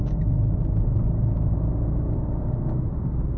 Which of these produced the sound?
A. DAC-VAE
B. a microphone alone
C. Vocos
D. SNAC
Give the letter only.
B